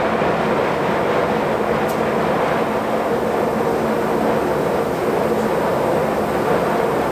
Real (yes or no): yes